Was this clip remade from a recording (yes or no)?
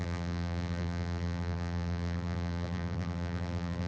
yes